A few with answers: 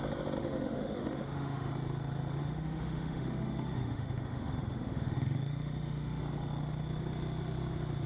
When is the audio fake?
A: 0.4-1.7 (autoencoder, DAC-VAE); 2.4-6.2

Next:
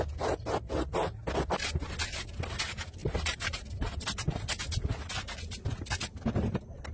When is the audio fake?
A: 3.0-4.6 (vocoder, BigVGAN v2)

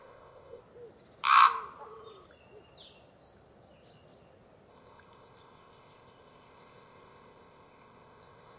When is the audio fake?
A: 0.0-0.6 (codec, ZipCodec); 4.7-8.6

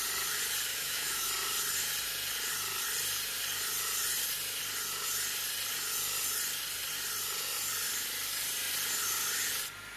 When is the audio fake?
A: 0.7-1.3 (autoencoder, DAC-VAE)

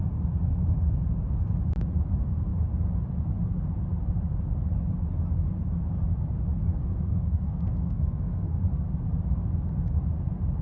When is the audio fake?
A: 6.7-8.6 (codec, SNAC)

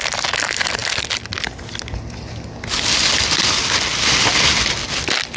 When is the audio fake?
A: none